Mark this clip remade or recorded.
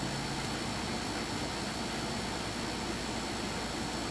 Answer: recorded